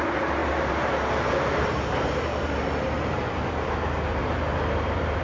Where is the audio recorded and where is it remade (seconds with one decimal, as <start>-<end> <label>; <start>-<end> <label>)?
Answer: 0.0-0.4 recorded; 0.4-3.5 remade; 3.5-4.2 recorded; 4.2-5.2 remade